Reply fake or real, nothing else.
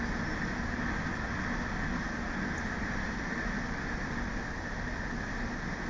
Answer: real